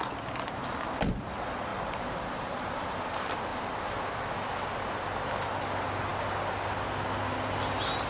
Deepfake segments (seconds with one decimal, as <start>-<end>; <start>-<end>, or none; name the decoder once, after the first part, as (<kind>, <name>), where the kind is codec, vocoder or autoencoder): 1.7-3.0 (vocoder, BigVGAN v2); 3.5-4.0